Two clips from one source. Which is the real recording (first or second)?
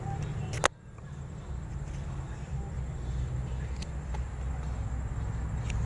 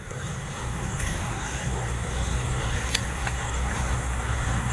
first